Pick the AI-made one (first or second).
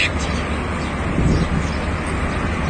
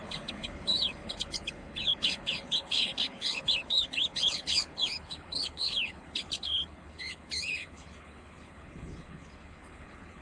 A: second